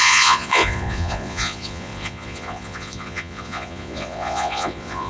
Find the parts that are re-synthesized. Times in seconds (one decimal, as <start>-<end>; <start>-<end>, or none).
0.0-5.1